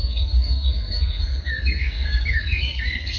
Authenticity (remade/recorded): remade